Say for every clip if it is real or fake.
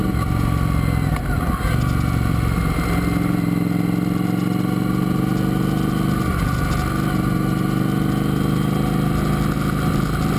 real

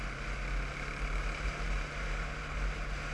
real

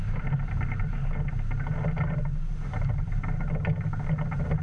real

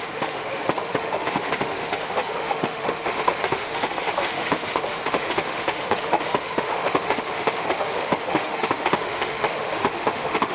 fake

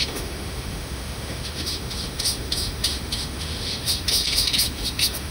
fake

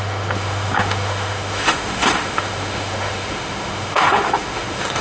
fake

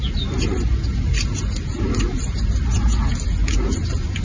real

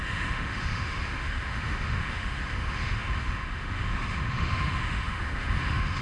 fake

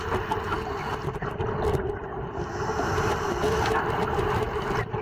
real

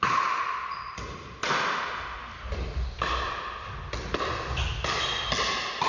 real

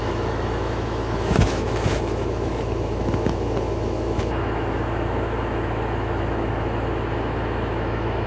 fake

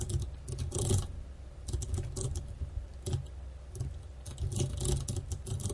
real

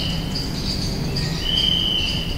real